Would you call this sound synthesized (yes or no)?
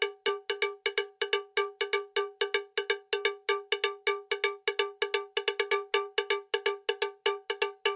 no